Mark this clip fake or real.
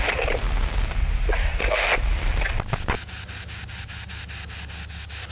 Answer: real